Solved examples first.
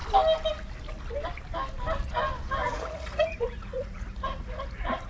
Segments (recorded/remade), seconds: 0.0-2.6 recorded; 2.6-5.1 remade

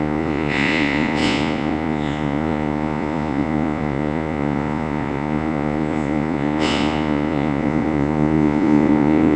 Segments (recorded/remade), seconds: 0.0-9.4 remade